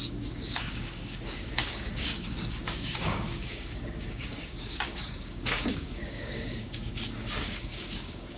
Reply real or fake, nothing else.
fake